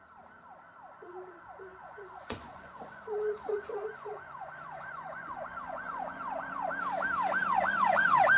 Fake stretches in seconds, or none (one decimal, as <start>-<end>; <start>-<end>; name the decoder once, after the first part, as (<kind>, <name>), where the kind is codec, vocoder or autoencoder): 1.7-6.7 (vocoder, Vocos); 7.4-8.4